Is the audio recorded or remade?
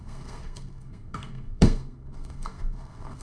remade